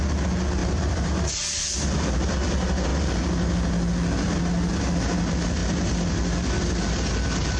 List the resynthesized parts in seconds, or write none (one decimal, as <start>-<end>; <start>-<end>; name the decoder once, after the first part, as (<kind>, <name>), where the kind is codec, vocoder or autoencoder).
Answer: 0.6-1.3 (vocoder, BigVGAN v2); 2.9-3.7; 5.6-6.7